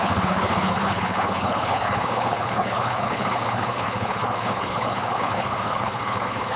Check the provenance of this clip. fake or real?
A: fake